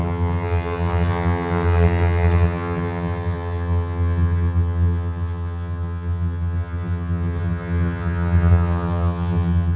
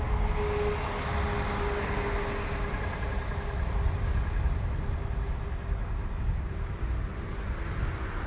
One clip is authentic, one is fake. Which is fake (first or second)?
first